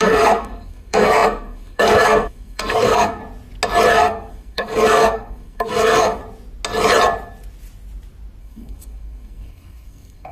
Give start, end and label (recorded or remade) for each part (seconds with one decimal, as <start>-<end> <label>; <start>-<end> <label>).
0.0-3.2 remade; 3.2-3.9 recorded; 3.9-6.2 remade; 6.2-8.4 recorded; 8.4-10.3 remade